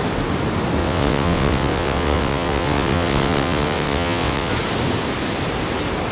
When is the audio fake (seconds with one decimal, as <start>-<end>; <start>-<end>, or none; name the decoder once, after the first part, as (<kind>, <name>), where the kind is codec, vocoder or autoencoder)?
0.8-4.5 (vocoder, WaveNeXt)